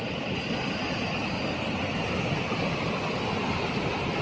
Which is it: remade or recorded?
recorded